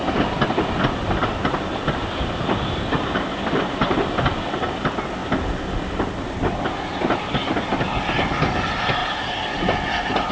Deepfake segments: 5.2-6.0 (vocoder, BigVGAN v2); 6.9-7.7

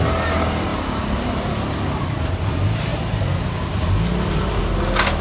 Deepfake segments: 0.7-1.2 (vocoder, BigVGAN v2)

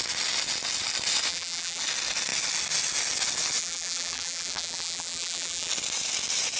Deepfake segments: 1.3-1.8 (vocoder, BigVGAN v2); 3.6-5.7